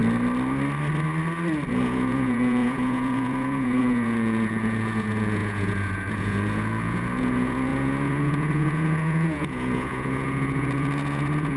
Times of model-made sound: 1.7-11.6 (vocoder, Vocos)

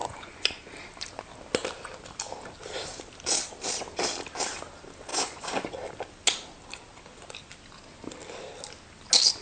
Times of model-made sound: 0.0-0.7 (vocoder, Vocos); 5.1-5.7

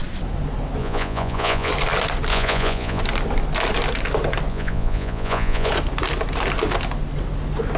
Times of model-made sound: 0.8-1.7 (vocoder, Vocos); 2.3-3.0; 4.5-5.7